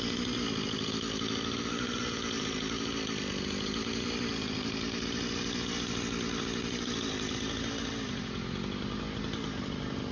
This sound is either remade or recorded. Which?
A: recorded